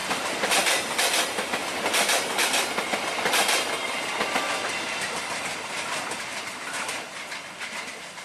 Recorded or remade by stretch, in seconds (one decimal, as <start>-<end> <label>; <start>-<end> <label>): 0.0-8.2 recorded